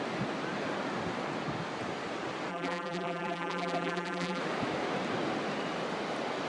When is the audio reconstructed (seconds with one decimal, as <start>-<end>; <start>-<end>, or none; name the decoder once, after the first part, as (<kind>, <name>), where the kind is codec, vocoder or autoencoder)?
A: 2.5-4.4 (vocoder, BigVGAN v2)